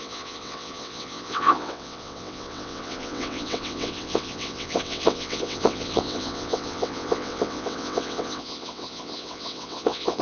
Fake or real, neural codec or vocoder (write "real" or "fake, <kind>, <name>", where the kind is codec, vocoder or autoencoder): fake, vocoder, WaveNeXt